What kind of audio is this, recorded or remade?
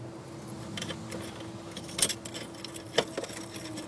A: recorded